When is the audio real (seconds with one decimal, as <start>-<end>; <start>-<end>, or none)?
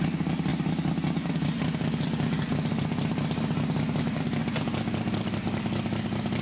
0.0-0.5; 4.0-6.4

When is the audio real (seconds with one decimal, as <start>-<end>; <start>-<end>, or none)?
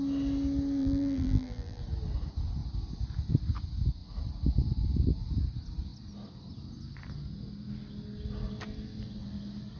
0.0-0.8; 1.8-9.8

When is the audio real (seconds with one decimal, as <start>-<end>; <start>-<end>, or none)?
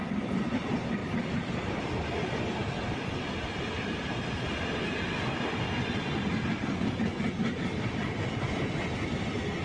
0.0-9.6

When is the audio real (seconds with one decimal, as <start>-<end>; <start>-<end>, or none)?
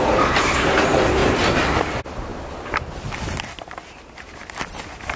0.0-1.2; 1.9-2.3; 4.8-5.2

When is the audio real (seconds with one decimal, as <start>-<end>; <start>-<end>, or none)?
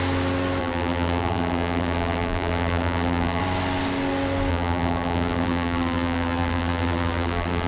0.0-0.6; 3.4-4.5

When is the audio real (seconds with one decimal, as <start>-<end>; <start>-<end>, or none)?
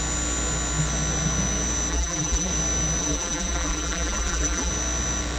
0.0-1.9; 2.5-3.0; 4.7-5.4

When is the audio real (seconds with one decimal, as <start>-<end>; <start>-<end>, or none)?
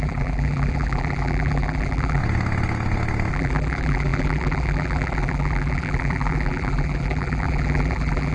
2.2-3.3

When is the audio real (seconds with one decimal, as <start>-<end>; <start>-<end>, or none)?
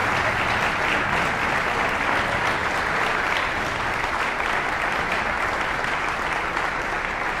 0.0-1.9